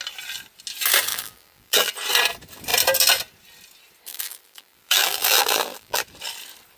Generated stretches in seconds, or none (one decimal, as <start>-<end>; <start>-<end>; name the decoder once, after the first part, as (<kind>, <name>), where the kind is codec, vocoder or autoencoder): 1.1-1.9 (vocoder, BigVGAN v2); 4.1-6.0